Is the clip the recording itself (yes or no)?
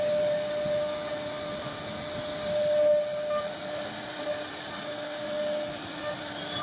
yes